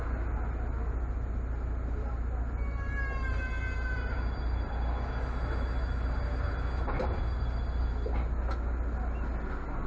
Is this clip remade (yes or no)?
no